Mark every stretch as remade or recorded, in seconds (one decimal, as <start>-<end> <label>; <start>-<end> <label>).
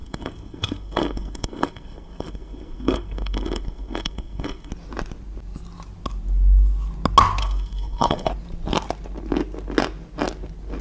0.0-4.7 remade; 4.7-7.4 recorded; 7.4-8.3 remade; 8.3-10.8 recorded